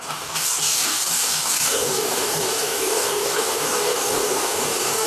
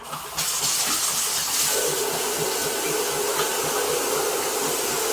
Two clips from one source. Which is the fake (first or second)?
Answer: first